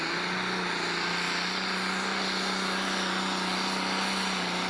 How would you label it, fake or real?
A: real